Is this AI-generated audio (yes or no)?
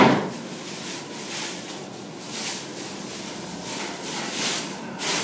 no